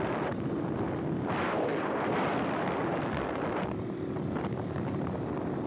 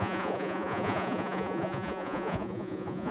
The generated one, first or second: second